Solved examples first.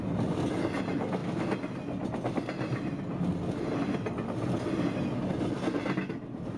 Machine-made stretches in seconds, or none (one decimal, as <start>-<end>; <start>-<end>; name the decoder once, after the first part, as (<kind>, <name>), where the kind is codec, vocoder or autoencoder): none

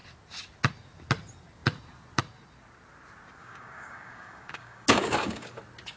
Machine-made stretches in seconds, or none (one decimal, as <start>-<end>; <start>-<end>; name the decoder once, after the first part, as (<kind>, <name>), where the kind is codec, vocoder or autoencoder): 3.4-5.6 (codec, DAC)

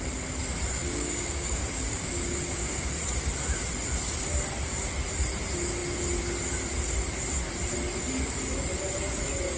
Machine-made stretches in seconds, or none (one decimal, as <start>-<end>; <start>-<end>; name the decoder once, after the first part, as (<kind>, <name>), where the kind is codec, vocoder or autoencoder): 0.8-2.9 (codec, DAC)

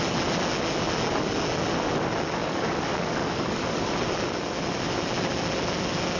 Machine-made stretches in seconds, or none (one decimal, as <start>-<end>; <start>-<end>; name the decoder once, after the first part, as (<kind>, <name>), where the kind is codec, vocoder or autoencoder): 2.4-3.9 (codec, DAC)

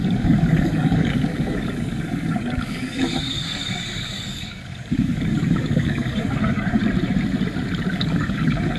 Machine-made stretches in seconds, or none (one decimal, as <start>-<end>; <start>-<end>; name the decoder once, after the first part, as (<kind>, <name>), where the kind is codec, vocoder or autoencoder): 0.0-6.8 (codec, DAC); 7.9-8.8

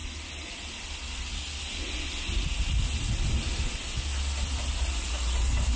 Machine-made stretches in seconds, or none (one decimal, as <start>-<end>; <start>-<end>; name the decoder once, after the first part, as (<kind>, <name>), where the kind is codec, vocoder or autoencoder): none

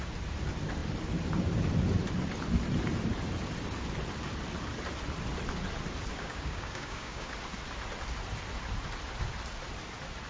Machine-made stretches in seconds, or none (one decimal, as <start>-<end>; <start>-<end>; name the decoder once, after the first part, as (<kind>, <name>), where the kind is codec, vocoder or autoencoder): 6.1-7.3 (codec, DAC)

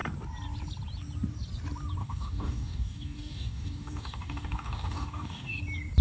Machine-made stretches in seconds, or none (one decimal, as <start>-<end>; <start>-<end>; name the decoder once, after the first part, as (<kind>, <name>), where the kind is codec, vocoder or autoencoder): 2.0-5.6 (codec, DAC)